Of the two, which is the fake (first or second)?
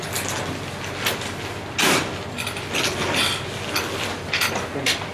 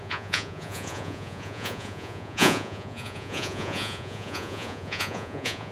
second